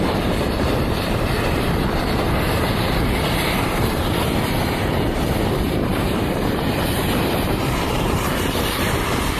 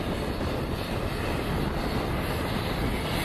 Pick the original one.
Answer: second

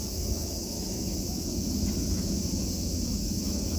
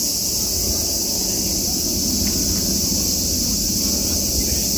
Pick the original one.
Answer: second